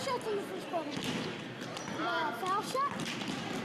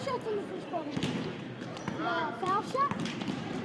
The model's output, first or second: second